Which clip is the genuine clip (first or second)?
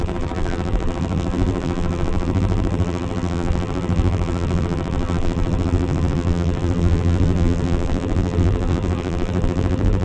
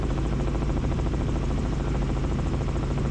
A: second